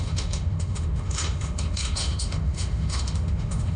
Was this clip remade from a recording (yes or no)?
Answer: yes